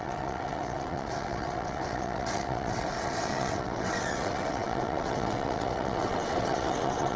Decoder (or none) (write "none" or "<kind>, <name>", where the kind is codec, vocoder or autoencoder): vocoder, WaveNeXt